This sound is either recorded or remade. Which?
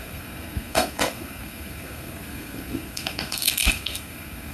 remade